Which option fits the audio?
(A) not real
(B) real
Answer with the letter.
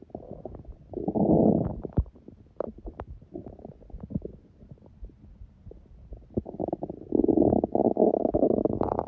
B